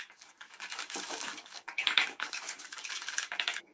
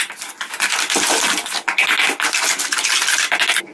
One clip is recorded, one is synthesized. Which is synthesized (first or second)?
first